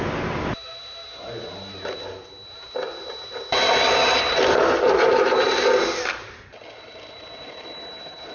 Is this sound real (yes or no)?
yes